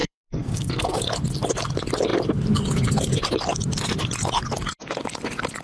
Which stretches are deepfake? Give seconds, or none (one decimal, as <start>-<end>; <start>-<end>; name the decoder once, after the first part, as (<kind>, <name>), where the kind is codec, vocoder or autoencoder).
0.0-1.0 (codec, SNAC)